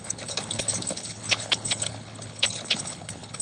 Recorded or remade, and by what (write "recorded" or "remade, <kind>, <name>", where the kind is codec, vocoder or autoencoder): remade, codec, HILCodec